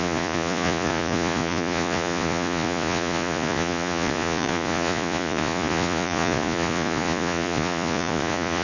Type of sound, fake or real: fake